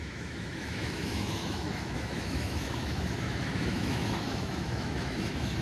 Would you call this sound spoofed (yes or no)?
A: yes